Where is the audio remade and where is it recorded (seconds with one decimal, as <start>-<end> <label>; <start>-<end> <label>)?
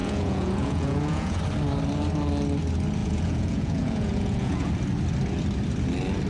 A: 0.0-1.4 remade; 1.4-3.0 recorded; 3.0-4.7 remade; 4.7-6.3 recorded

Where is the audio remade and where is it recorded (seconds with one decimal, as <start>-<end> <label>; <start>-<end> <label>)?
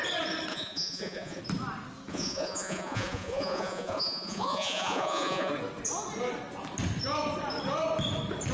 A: 0.0-0.5 recorded; 0.5-1.4 remade; 1.4-2.1 recorded; 2.1-5.5 remade; 5.5-8.5 recorded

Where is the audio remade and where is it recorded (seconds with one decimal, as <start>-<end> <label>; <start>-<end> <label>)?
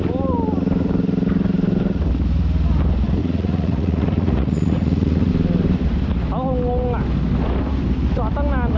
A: 0.0-3.2 recorded; 3.2-5.3 remade; 5.3-8.8 recorded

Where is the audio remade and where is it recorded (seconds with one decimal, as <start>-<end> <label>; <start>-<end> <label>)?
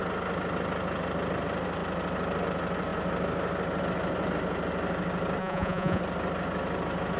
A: 0.0-5.4 recorded; 5.4-6.0 remade; 6.0-7.2 recorded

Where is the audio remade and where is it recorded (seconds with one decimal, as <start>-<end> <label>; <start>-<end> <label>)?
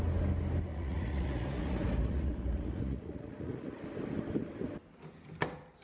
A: 0.0-0.7 recorded; 0.7-3.8 remade; 3.8-5.8 recorded